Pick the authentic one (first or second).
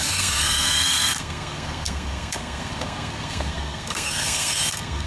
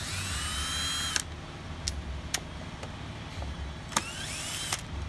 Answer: second